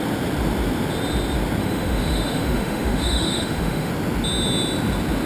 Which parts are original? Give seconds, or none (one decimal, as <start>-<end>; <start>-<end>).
0.0-1.6; 3.9-5.3